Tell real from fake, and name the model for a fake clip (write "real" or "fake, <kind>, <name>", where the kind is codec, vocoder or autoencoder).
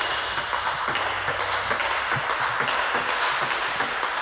real